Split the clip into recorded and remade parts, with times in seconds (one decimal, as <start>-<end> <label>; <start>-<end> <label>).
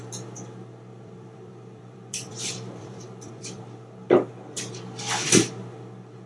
0.0-0.9 recorded; 0.9-3.6 remade; 3.6-6.3 recorded